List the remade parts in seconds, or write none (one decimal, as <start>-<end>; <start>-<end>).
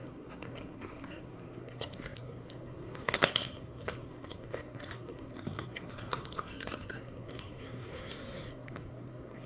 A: 0.0-9.5